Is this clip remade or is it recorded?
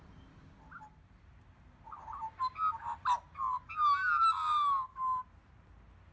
recorded